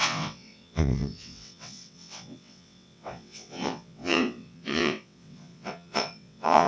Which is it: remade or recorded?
remade